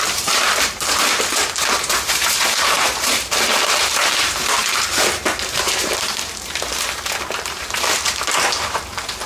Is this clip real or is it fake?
fake